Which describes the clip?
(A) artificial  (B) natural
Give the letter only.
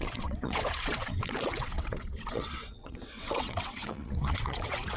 A